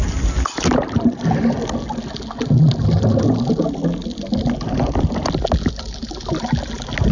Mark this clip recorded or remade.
recorded